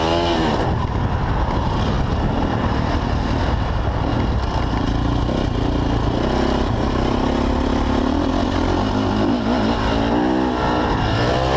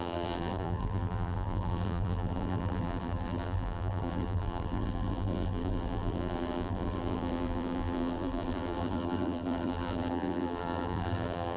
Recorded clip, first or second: first